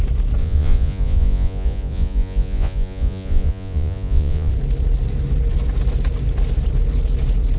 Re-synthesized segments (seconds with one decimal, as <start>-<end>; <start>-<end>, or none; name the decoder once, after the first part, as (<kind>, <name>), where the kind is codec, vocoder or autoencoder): 0.4-4.5 (vocoder, Vocos)